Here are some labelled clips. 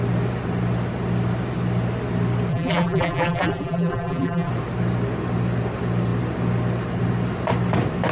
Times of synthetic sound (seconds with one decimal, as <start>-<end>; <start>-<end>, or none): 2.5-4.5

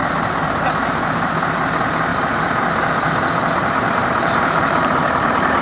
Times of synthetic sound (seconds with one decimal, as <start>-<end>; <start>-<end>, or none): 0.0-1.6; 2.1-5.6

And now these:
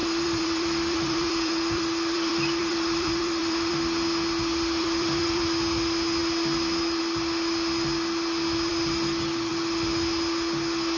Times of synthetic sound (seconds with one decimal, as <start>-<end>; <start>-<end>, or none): 0.0-3.8; 4.8-5.4

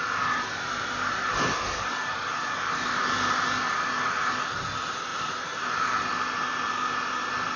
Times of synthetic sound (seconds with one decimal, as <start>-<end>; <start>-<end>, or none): 5.1-5.6